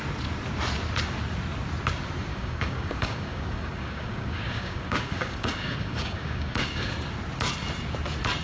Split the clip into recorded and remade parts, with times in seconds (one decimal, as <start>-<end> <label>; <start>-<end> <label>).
0.0-2.3 recorded; 2.3-6.9 remade; 6.9-8.4 recorded